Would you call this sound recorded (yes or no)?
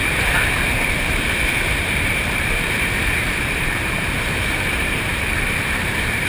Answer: no